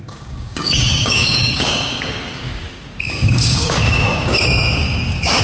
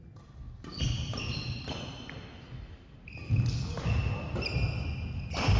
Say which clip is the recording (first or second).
second